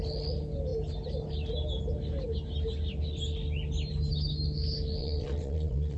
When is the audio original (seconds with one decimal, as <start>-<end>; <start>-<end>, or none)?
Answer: 0.0-5.0